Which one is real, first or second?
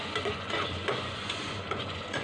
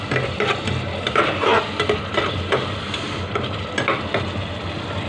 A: second